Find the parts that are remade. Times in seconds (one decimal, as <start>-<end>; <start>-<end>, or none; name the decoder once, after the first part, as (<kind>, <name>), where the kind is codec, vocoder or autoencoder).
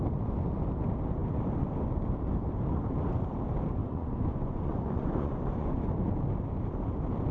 3.8-5.9 (vocoder, Vocos)